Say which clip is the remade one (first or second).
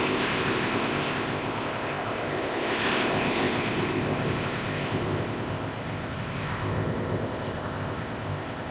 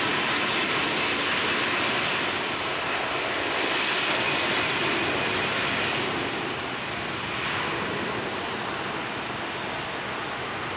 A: first